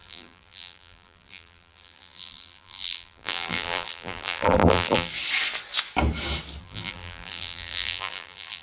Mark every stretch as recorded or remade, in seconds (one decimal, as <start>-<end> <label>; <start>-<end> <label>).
0.0-5.1 remade; 5.1-6.6 recorded; 6.6-8.6 remade